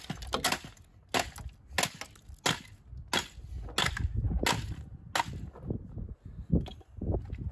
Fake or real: real